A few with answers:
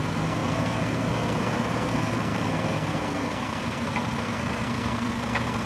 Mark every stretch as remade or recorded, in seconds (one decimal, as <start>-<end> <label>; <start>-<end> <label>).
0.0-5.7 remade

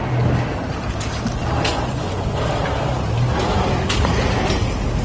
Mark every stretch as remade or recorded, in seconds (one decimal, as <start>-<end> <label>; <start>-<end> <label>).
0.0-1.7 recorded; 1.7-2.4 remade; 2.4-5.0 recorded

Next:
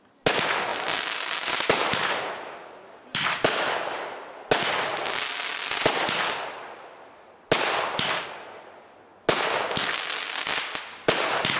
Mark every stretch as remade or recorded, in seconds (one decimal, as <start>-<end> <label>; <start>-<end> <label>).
0.0-11.6 recorded

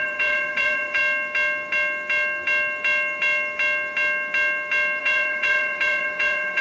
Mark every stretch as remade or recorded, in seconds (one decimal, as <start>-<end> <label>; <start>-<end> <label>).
0.0-1.0 remade; 1.0-5.0 recorded; 5.0-6.6 remade

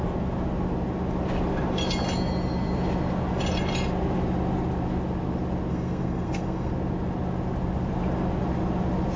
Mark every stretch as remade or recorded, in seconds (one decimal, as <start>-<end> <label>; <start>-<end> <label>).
0.0-5.7 recorded; 5.7-6.7 remade; 6.7-9.2 recorded

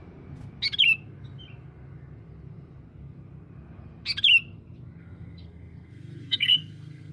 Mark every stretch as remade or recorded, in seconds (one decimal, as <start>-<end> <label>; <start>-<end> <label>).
0.0-5.0 recorded; 5.0-7.1 remade

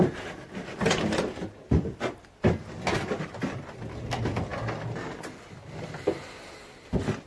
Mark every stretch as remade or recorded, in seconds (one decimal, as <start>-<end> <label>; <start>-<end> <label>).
0.0-7.3 recorded

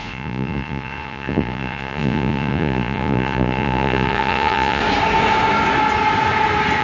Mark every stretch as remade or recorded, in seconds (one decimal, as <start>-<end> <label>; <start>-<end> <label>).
0.0-4.8 remade; 4.8-6.8 recorded